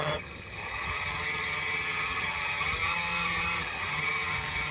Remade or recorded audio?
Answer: remade